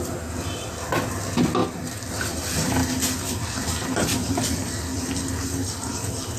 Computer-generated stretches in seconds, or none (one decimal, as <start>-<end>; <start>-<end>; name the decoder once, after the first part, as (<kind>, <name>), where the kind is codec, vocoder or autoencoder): none